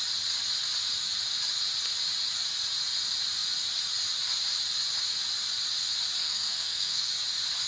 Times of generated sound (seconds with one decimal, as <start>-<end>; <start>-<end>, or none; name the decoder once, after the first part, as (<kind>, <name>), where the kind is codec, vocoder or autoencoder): 6.2-7.1 (codec, SNAC)

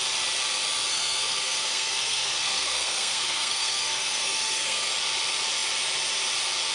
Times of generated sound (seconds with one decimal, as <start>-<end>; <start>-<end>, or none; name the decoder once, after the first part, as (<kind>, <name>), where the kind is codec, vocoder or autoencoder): 0.9-4.9 (codec, SNAC)

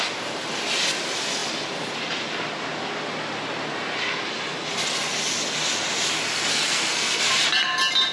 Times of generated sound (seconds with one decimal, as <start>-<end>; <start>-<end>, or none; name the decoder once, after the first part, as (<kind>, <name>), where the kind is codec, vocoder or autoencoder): 6.5-7.3 (codec, SNAC)

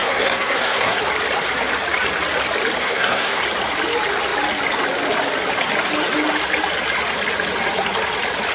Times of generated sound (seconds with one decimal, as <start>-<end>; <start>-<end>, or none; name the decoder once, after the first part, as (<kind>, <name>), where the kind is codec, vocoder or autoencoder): 0.0-1.0 (codec, SNAC); 2.8-3.4

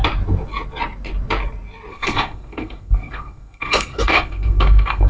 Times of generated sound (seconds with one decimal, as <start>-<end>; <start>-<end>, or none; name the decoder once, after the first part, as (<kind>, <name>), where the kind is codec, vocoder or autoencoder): 1.9-5.1 (codec, SNAC)

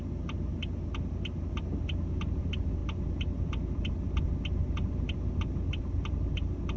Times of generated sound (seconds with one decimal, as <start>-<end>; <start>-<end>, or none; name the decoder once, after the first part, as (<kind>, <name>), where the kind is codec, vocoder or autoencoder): none